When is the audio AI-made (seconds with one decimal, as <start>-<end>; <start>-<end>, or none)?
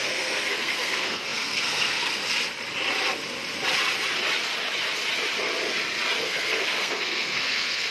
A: 0.0-2.2; 6.2-7.9